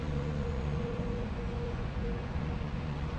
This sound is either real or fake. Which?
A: fake